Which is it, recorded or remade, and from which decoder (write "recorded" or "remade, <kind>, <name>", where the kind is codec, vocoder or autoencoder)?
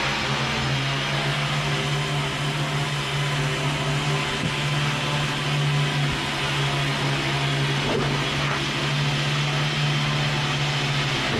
recorded